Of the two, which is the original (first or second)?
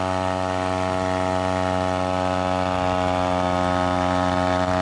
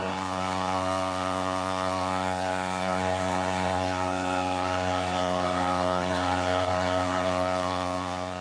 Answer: first